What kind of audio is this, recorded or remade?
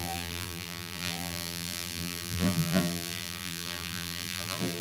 remade